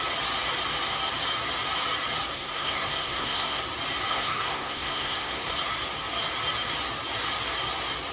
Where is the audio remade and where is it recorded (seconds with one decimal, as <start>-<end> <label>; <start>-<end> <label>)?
0.0-2.3 recorded; 2.3-3.6 remade; 3.6-4.1 recorded; 4.1-5.6 remade; 5.6-8.1 recorded